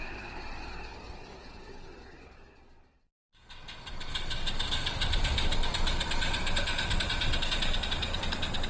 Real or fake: real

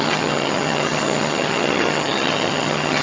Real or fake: fake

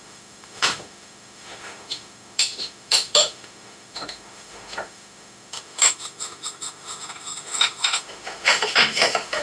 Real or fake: fake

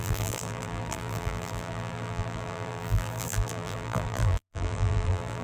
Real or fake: fake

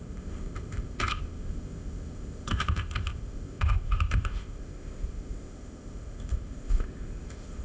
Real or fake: fake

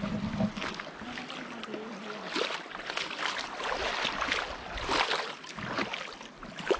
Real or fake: real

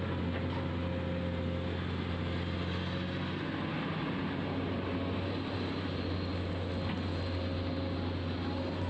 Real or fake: real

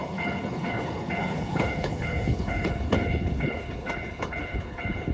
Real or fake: fake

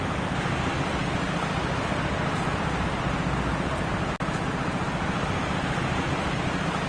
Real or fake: real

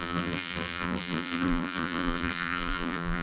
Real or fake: fake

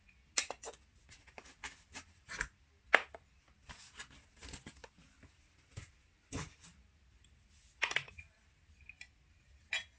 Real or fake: real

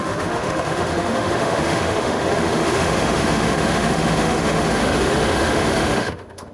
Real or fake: fake